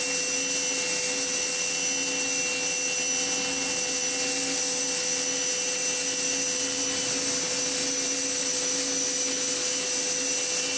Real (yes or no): yes